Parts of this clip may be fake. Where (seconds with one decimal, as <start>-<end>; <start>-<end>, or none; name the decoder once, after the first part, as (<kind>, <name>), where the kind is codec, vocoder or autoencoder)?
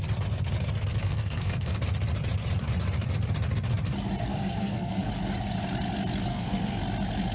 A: 1.0-1.8 (codec, SNAC); 4.3-5.1; 6.3-6.8